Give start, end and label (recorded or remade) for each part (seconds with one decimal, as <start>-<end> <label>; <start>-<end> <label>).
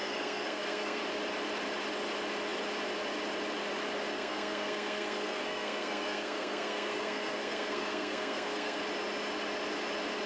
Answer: 0.0-1.0 remade; 1.0-4.1 recorded; 4.1-8.8 remade; 8.8-10.3 recorded